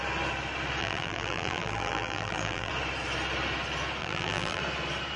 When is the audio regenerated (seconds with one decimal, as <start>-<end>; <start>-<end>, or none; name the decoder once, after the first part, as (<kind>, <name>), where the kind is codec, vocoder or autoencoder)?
0.8-2.7 (vocoder, BigVGAN v2); 4.0-4.6